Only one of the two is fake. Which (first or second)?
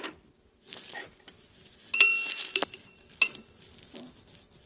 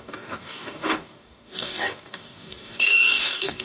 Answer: second